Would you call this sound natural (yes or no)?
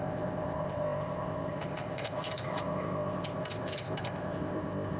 no